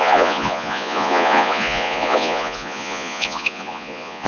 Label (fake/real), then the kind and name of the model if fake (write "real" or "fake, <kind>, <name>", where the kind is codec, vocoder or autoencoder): fake, vocoder, Vocos